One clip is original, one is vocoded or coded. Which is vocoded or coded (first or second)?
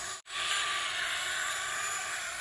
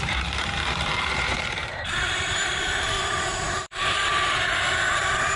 second